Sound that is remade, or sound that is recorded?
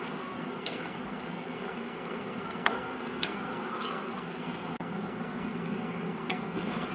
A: remade